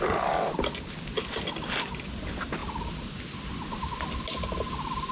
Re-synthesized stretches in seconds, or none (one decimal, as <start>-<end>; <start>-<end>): none